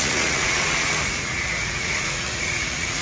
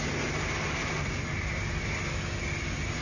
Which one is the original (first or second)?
second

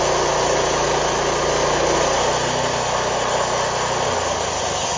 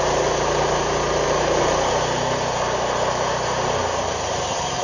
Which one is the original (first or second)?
first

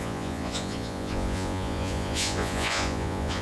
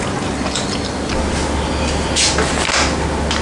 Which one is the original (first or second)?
second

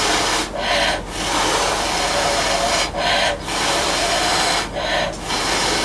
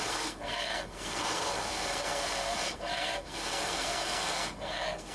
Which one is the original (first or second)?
first